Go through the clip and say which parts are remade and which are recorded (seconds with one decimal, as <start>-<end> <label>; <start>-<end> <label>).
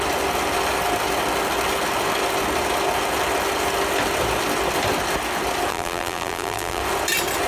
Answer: 0.0-5.7 recorded; 5.7-6.8 remade; 6.8-7.5 recorded